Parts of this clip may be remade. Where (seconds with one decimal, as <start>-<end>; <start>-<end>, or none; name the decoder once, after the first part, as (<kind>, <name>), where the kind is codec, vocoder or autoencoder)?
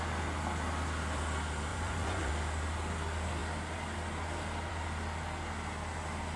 1.7-2.3 (vocoder, Vocos)